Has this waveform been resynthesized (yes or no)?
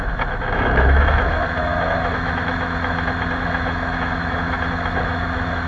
yes